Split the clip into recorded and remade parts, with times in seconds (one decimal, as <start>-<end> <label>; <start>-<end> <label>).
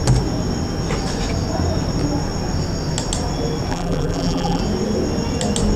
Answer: 0.0-3.7 recorded; 3.7-4.6 remade; 4.6-5.8 recorded